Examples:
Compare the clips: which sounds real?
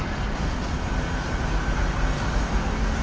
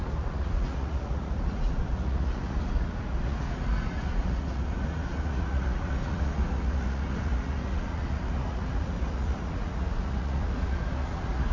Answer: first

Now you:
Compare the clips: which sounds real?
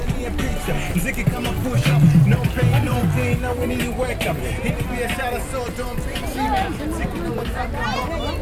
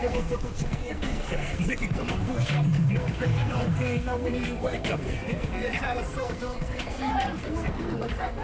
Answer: first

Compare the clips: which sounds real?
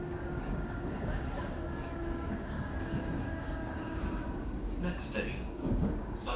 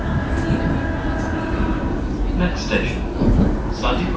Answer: second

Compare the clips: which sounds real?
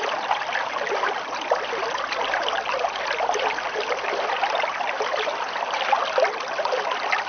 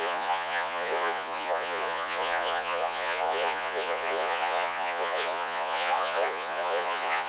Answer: first